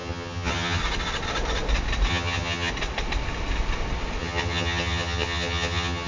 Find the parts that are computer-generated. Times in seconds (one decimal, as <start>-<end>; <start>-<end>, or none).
0.0-0.8; 2.1-2.7; 4.2-6.1